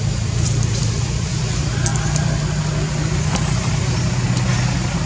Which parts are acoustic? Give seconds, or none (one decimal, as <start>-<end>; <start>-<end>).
0.0-5.1